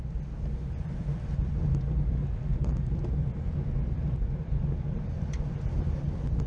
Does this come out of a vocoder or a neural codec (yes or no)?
no